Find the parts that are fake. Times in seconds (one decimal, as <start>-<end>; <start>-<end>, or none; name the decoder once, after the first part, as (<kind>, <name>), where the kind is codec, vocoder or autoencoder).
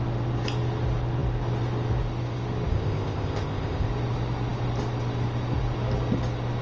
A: 2.7-3.9 (codec, ZipCodec)